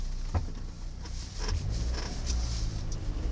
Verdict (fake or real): real